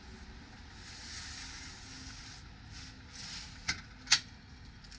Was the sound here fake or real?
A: real